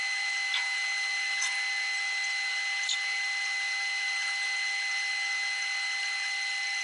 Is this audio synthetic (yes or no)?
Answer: no